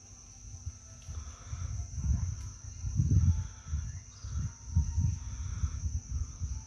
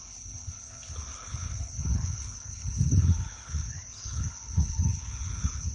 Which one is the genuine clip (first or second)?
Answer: first